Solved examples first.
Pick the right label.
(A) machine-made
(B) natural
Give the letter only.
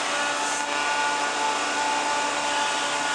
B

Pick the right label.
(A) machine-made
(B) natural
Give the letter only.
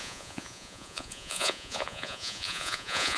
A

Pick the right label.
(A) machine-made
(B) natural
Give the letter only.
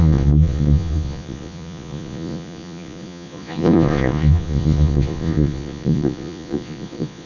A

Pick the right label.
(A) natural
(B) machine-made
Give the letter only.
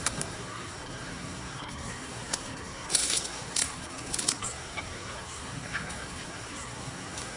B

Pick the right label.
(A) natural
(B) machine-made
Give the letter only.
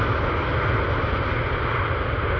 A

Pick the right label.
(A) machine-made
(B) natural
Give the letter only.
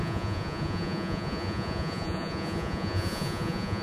A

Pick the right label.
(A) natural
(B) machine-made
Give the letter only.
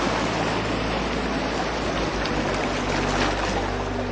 A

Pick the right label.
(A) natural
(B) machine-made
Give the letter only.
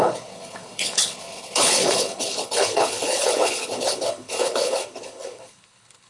B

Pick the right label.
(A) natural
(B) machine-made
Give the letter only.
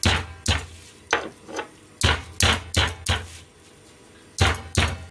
A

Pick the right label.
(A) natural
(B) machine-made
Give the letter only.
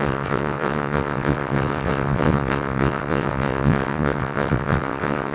B